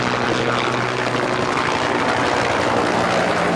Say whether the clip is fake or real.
real